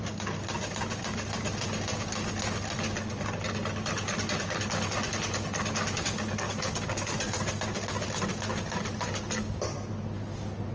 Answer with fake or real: real